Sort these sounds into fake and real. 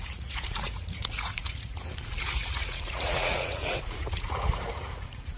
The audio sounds fake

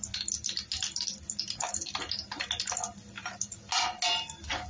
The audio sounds real